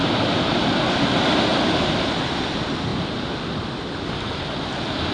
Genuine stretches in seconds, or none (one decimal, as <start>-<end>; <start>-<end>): 0.9-1.5; 2.4-5.1